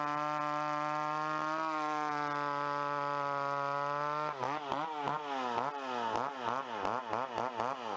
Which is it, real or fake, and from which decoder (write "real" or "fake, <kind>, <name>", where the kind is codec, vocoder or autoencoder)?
real